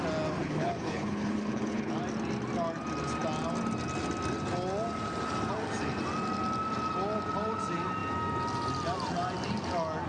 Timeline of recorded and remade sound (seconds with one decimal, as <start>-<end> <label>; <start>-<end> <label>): 0.0-0.4 recorded; 0.4-1.9 remade; 1.9-10.1 recorded